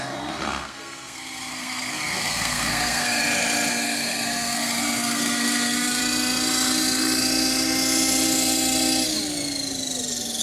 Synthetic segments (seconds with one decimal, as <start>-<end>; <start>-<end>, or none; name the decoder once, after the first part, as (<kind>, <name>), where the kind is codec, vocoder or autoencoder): 0.0-3.2 (codec, SNAC); 3.7-6.0